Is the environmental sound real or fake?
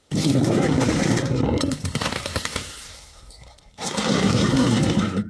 fake